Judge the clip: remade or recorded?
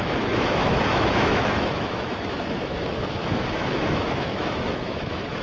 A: remade